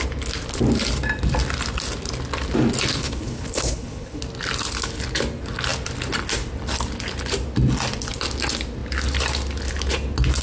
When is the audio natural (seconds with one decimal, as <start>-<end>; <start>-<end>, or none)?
0.0-3.0; 4.2-10.4